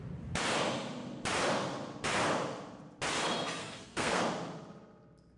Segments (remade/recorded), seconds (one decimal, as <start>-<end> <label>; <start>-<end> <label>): 0.0-3.6 recorded; 3.6-4.2 remade; 4.2-5.4 recorded